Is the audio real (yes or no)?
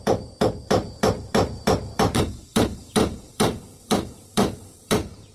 no